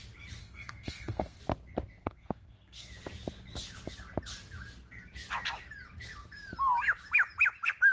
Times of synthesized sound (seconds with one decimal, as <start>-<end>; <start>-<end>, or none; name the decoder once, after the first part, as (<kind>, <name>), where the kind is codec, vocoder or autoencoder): 0.4-1.4 (codec, SNAC); 2.0-2.9

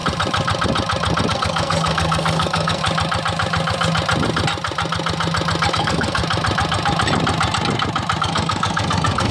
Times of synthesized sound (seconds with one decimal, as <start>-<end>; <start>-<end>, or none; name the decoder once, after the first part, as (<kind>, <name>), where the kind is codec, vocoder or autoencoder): 1.3-2.8 (codec, SNAC); 5.7-6.2; 8.2-9.3

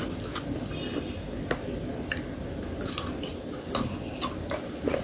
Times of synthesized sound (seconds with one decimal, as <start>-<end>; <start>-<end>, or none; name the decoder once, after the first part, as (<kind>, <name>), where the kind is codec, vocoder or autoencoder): none

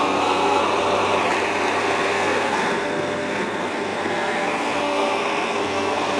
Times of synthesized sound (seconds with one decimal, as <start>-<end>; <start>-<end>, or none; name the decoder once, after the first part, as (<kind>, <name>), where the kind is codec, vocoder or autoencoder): 0.0-0.6 (codec, SNAC); 1.8-6.2

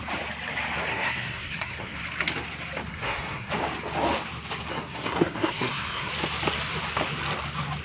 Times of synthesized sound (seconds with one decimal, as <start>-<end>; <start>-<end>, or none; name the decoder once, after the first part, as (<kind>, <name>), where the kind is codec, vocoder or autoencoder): 0.9-2.0 (codec, SNAC); 2.9-3.5; 4.7-6.1